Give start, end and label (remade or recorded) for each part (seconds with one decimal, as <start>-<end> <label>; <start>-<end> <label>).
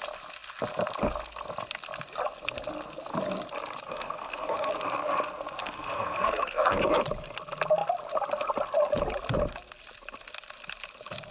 0.0-3.9 recorded; 3.9-4.7 remade; 4.7-5.6 recorded; 5.6-6.8 remade; 6.8-11.3 recorded